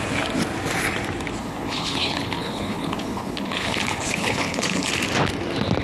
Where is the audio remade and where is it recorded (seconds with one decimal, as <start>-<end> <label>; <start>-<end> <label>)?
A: 0.0-1.4 recorded; 1.4-4.9 remade; 4.9-5.8 recorded